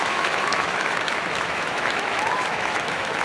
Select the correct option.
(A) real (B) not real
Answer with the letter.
B